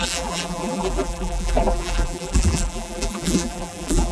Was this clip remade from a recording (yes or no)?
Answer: yes